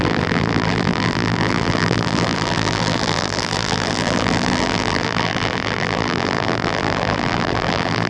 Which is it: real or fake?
fake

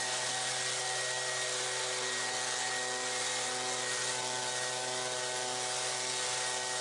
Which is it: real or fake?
real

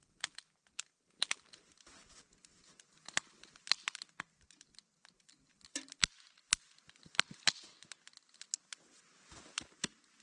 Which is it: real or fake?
real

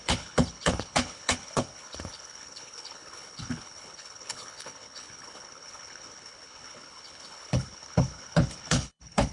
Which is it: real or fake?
fake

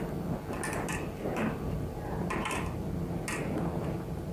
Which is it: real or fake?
real